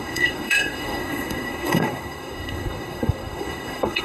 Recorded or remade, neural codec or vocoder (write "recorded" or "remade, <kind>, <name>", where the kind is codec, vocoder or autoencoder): remade, codec, SNAC